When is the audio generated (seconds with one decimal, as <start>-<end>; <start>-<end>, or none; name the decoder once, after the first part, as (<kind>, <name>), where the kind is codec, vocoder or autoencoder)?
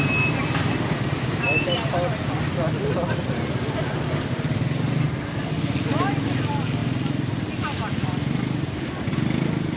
none